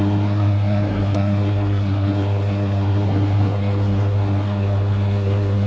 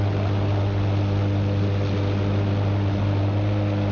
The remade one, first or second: first